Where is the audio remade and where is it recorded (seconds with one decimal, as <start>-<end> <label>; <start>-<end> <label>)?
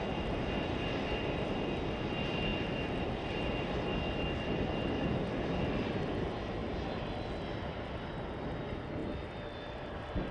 0.0-10.3 recorded